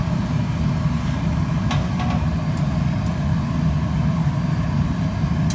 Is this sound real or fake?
real